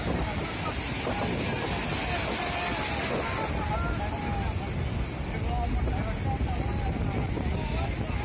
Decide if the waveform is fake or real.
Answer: real